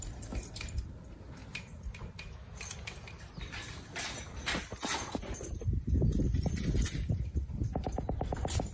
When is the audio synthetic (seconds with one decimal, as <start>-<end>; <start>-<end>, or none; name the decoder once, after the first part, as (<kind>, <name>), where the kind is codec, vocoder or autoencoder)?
none